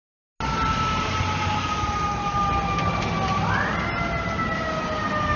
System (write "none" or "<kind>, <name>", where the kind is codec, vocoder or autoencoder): none